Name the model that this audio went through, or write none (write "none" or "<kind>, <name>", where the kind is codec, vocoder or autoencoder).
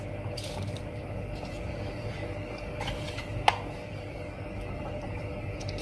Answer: codec, DAC